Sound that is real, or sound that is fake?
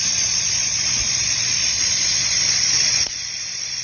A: fake